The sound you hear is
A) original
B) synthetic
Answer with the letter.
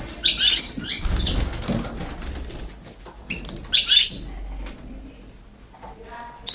A